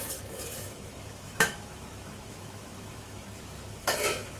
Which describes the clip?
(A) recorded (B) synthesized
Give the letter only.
B